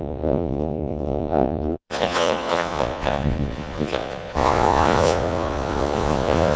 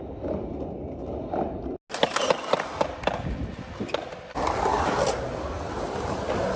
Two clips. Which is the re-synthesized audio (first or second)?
first